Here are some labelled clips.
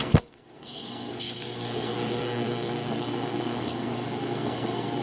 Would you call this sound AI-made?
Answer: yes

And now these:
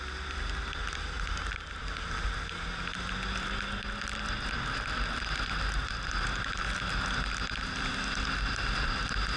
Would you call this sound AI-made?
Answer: no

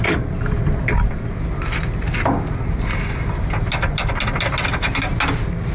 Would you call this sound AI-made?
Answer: no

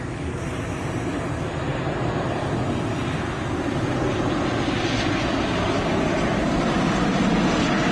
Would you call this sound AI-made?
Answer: no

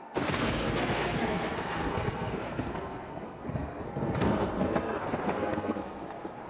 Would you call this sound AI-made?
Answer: yes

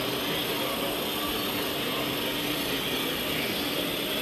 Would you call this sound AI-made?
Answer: no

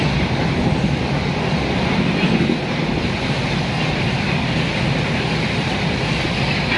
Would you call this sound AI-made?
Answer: no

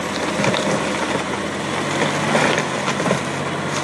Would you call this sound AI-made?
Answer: no